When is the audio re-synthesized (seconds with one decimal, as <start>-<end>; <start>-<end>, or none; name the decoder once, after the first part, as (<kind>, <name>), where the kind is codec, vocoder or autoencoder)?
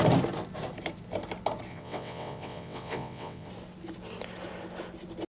1.7-3.5 (vocoder, WaveNeXt)